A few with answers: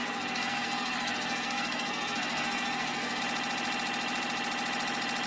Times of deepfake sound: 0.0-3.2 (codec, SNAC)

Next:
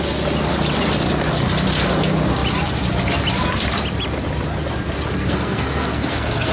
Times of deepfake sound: 5.2-6.5 (codec, SNAC)

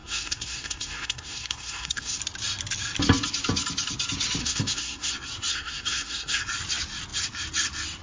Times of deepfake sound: 0.0-2.2 (codec, SNAC); 4.4-5.1; 5.5-6.4

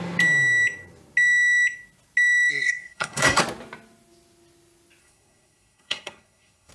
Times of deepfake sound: 2.5-3.4 (codec, SNAC); 5.0-6.7

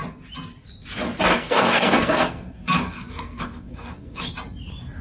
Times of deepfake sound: 1.3-4.3 (codec, SNAC)